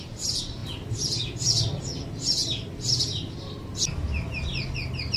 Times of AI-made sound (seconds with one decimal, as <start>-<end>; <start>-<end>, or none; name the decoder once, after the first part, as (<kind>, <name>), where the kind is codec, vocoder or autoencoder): none